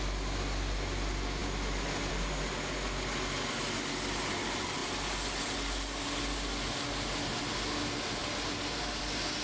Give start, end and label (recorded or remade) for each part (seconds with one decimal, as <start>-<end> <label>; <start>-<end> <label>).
0.0-9.4 recorded